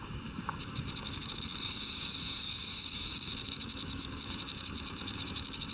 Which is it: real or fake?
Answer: fake